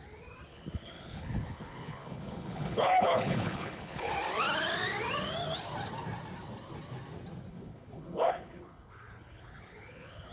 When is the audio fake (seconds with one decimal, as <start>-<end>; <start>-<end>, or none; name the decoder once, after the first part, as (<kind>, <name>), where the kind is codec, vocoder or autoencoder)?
0.5-4.1 (codec, HILCodec); 7.5-10.3